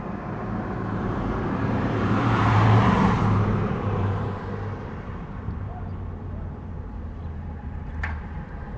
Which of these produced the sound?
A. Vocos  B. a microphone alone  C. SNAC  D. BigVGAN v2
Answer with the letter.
D